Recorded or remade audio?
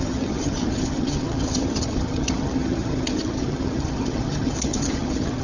remade